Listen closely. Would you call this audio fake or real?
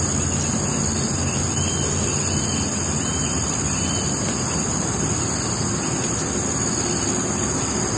real